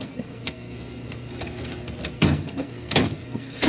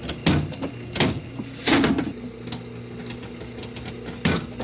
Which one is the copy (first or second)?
first